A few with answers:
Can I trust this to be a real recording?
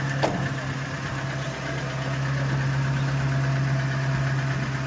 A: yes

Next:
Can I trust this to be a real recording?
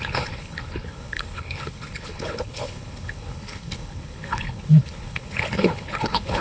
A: no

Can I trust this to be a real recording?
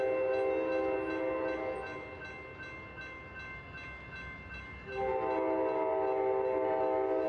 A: yes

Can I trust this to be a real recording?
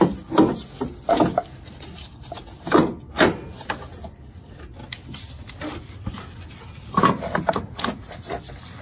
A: yes